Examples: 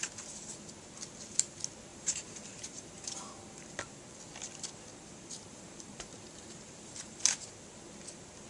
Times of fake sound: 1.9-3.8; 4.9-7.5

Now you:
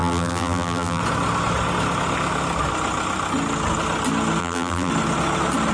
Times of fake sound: 0.0-1.0; 4.4-4.9

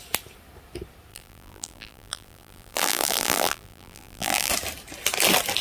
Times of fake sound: 1.1-4.5

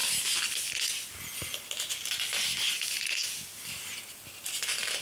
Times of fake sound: none